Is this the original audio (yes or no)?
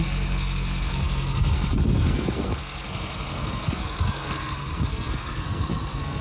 no